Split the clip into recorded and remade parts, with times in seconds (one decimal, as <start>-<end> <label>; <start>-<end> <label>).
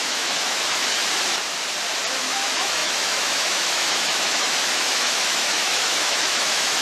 0.0-1.0 remade; 1.0-2.2 recorded; 2.2-6.8 remade